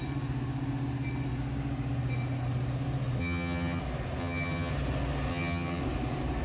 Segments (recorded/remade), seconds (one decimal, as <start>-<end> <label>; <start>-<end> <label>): 0.0-3.2 recorded; 3.2-3.8 remade; 3.8-4.2 recorded; 4.2-4.7 remade; 4.7-5.3 recorded; 5.3-5.8 remade; 5.8-6.4 recorded